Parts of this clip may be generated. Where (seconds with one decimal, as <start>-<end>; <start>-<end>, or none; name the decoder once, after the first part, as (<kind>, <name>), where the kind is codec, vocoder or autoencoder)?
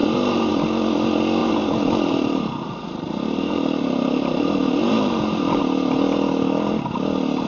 0.0-0.5 (vocoder, BigVGAN v2); 1.4-5.6